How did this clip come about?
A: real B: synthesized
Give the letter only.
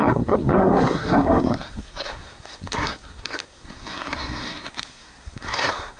B